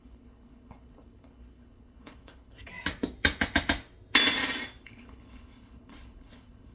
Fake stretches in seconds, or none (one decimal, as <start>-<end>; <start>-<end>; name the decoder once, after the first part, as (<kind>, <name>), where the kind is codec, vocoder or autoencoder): 0.0-2.7 (codec, HILCodec); 4.8-6.7